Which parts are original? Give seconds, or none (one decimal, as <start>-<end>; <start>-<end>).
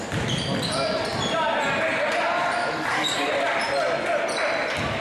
0.0-2.6; 3.3-5.0